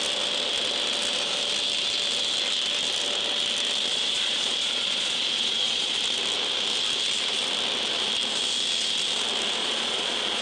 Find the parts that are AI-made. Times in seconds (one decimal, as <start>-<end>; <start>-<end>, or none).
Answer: 3.9-6.0; 9.6-10.4